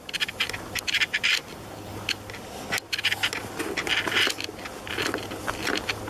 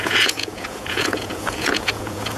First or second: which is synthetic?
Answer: second